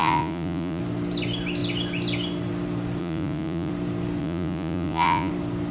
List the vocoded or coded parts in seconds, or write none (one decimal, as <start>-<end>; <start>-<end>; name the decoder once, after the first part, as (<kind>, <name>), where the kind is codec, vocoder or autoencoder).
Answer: 0.0-0.8 (vocoder, Vocos); 3.0-3.7; 4.2-5.3